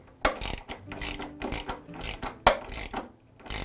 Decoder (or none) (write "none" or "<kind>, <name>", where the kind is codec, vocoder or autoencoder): none